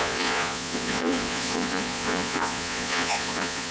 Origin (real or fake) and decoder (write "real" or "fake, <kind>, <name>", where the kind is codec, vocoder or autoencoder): fake, vocoder, Vocos